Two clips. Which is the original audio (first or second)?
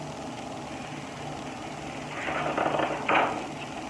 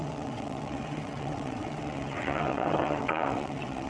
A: first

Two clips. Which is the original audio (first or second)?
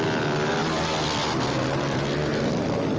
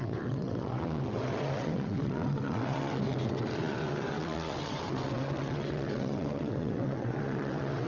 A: first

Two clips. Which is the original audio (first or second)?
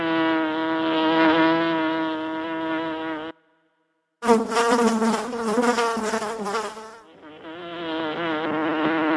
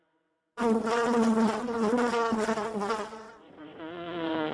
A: first